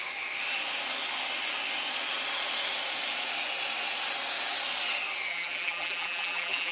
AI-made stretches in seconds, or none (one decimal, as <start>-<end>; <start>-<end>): 5.3-6.7